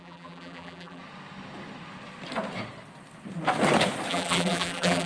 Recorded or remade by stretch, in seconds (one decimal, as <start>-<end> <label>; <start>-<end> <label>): 0.0-1.0 remade; 1.0-4.1 recorded; 4.1-5.1 remade